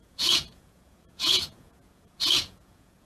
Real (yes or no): no